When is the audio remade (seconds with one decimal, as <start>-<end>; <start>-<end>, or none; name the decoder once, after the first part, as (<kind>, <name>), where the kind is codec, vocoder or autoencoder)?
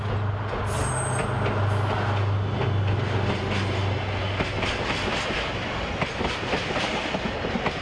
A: none